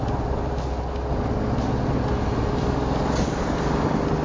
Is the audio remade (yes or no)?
no